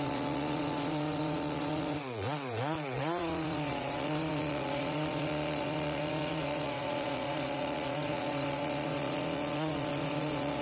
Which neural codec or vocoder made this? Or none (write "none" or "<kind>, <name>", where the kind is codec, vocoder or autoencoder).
vocoder, Vocos